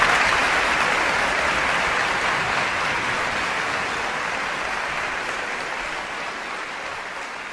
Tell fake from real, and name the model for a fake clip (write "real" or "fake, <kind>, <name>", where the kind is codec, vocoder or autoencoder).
real